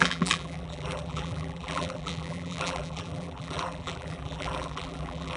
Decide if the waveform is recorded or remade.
remade